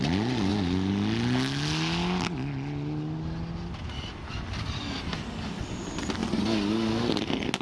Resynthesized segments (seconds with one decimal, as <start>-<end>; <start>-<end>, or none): none